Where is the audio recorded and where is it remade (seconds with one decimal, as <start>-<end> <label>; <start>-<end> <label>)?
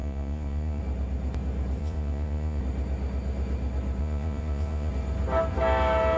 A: 0.0-0.8 remade; 0.8-1.8 recorded; 1.8-2.6 remade; 2.6-4.0 recorded; 4.0-4.9 remade; 4.9-6.2 recorded